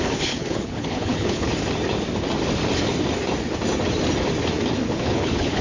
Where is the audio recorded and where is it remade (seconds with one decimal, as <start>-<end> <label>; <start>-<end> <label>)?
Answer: 0.0-1.5 remade; 1.5-4.9 recorded; 4.9-5.6 remade